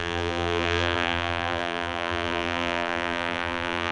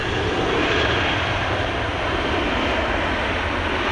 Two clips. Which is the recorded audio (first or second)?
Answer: second